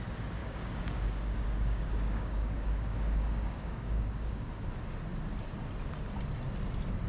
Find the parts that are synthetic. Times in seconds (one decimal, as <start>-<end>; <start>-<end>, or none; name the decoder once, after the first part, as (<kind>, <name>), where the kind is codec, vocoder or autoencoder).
0.4-4.5 (codec, DAC)